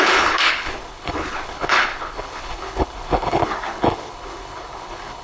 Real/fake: fake